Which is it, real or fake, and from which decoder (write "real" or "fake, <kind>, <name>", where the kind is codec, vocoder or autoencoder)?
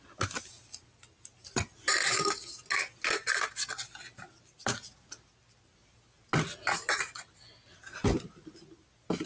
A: real